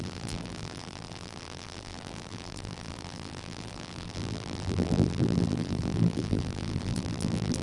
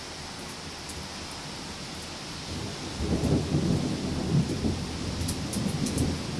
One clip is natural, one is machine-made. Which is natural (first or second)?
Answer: second